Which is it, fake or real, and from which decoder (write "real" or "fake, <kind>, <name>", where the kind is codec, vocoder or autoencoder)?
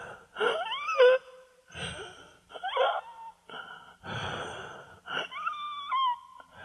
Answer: real